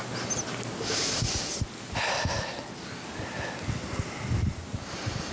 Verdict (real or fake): real